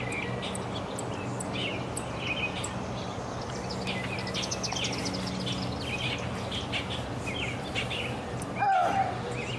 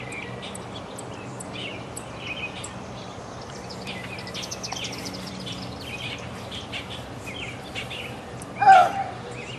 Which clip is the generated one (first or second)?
second